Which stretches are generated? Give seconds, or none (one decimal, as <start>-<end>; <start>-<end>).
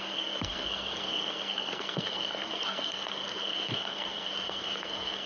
0.0-5.3